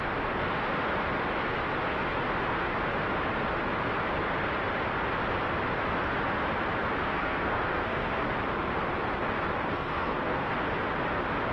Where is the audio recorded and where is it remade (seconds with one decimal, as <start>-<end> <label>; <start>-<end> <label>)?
0.0-7.1 recorded; 7.1-8.2 remade; 8.2-9.7 recorded; 9.7-10.5 remade; 10.5-11.5 recorded